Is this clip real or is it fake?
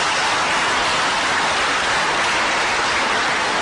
real